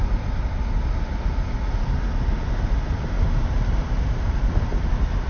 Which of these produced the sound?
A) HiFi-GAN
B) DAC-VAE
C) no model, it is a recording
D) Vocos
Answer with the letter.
C